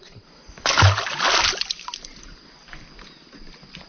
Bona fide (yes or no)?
yes